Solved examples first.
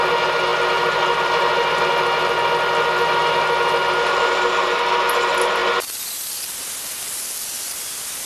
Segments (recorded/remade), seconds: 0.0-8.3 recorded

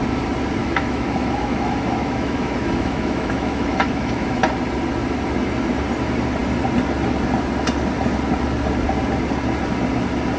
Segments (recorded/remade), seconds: 0.0-0.6 recorded; 0.6-4.4 remade; 4.4-10.4 recorded

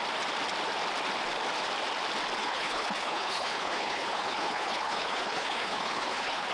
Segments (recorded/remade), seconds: 0.0-2.4 recorded; 2.4-6.5 remade

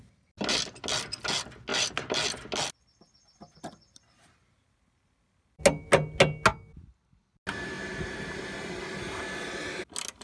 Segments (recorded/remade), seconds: 0.0-10.2 recorded

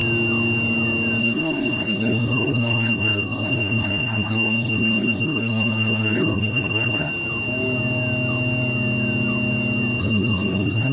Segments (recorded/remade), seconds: 0.0-1.2 recorded; 1.2-7.1 remade; 7.1-10.0 recorded; 10.0-10.9 remade

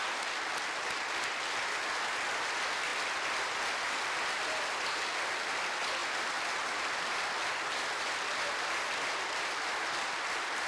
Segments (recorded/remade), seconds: 0.0-10.7 recorded

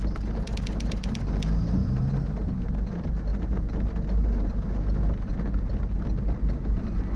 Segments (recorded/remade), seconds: 0.0-7.2 recorded

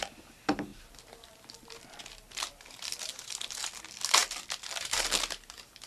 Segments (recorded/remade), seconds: 0.0-0.7 recorded; 0.7-3.8 remade; 3.8-5.9 recorded